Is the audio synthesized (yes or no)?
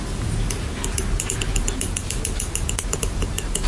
no